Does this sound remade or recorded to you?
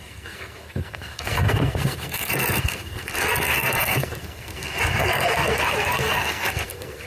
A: remade